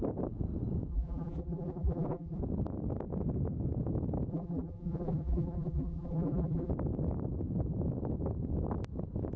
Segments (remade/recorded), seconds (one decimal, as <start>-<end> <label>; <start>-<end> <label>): 0.0-0.9 recorded; 0.9-2.4 remade; 2.4-4.3 recorded; 4.3-6.7 remade; 6.7-9.4 recorded